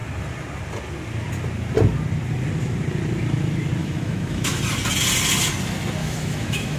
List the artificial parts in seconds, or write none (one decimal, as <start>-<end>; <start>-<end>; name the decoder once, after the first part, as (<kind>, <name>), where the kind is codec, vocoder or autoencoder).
3.8-4.6 (autoencoder, DAC-VAE); 6.0-6.8